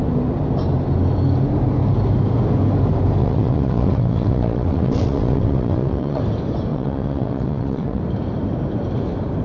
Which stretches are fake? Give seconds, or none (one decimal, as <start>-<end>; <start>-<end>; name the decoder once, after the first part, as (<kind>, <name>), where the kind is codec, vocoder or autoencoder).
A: 3.2-6.2 (vocoder, WaveNeXt); 6.7-8.0

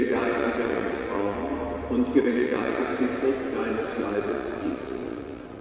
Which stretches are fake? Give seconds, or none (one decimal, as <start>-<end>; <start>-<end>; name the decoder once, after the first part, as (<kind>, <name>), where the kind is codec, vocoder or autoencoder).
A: 0.0-1.5 (vocoder, WaveNeXt); 2.2-2.9; 3.8-5.6

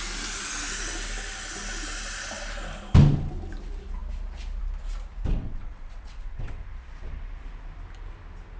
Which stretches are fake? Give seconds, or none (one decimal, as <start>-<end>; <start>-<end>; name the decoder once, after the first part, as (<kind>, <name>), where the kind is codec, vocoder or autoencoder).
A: 5.3-6.6 (vocoder, WaveNeXt)

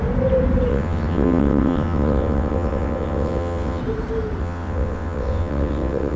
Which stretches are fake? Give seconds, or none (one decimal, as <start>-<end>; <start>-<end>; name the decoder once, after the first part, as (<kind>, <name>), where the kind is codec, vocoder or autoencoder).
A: 0.7-3.8 (vocoder, WaveNeXt); 4.4-6.2